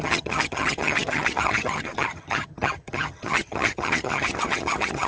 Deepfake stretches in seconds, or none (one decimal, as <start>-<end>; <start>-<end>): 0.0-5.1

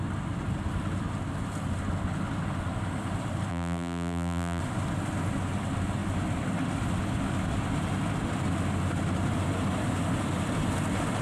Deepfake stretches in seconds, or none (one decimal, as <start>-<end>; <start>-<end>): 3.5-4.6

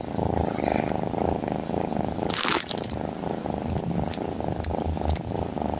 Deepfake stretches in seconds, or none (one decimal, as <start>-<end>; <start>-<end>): none

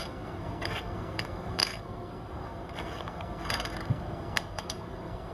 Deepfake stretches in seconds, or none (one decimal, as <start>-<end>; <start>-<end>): 0.0-5.3

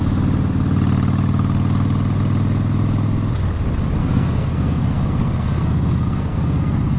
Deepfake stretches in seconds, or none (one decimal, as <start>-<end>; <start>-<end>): 4.0-7.0

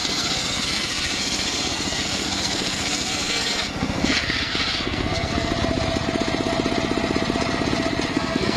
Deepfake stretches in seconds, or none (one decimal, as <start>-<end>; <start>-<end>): 0.0-5.5; 8.1-8.6

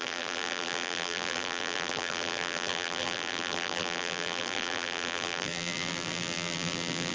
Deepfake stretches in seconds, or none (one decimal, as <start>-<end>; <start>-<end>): 0.0-7.1